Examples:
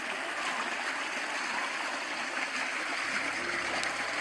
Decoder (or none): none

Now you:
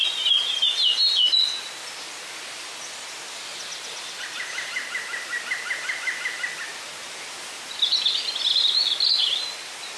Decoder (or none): none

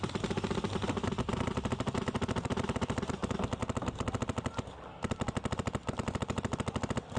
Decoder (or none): none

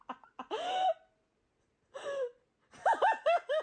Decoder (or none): none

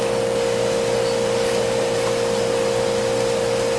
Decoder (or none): none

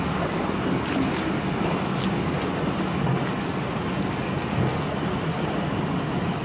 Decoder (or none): none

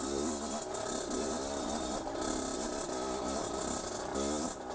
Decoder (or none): none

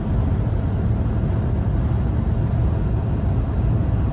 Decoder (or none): none